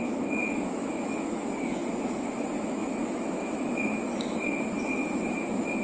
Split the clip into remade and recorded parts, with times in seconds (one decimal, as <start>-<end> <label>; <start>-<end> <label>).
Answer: 0.0-5.8 remade